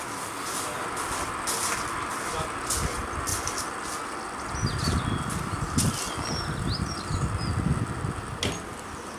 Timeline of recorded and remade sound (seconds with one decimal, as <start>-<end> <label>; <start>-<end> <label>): 0.0-9.2 recorded

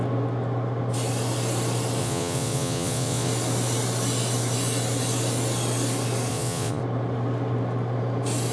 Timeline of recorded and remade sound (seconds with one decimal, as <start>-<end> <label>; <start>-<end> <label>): 0.0-2.0 recorded; 2.0-3.3 remade; 3.3-6.3 recorded; 6.3-6.8 remade; 6.8-8.5 recorded

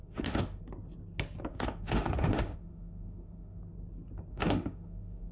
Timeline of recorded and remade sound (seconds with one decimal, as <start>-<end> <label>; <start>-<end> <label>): 0.0-0.6 remade; 0.6-1.5 recorded; 1.5-3.6 remade; 3.6-4.3 recorded; 4.3-5.3 remade

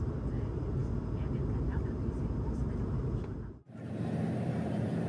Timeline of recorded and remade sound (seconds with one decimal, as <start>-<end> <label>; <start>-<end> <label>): 0.0-5.1 recorded

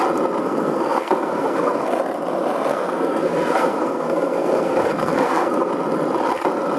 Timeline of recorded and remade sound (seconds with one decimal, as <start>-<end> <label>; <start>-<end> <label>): 0.0-0.4 recorded; 0.4-2.0 remade; 2.0-2.7 recorded; 2.7-5.7 remade; 5.7-6.8 recorded

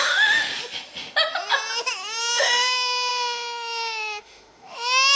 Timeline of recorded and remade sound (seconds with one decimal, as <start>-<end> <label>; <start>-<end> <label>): 0.0-0.5 remade; 0.5-2.2 recorded; 2.2-5.2 remade

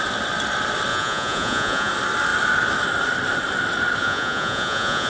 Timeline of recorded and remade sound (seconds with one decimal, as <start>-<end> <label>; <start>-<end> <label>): 0.0-0.9 recorded; 0.9-1.9 remade; 1.9-4.0 recorded; 4.0-5.1 remade

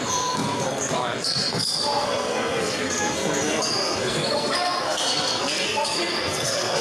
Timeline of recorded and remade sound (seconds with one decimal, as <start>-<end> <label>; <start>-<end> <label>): 0.0-6.8 remade